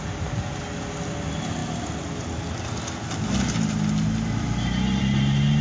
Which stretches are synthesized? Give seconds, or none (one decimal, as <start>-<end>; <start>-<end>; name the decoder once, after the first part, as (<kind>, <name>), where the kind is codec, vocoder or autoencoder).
none